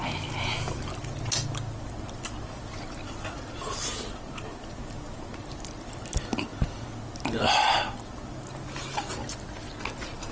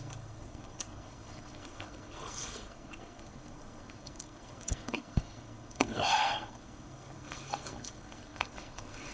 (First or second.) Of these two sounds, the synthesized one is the second